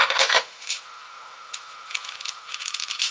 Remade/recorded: remade